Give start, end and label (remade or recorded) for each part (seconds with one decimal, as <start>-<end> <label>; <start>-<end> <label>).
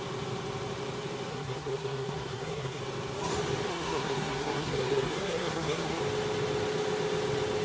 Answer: 0.0-1.3 recorded; 1.3-2.8 remade; 2.8-3.7 recorded; 3.7-6.0 remade; 6.0-7.6 recorded